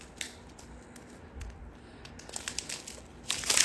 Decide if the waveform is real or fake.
real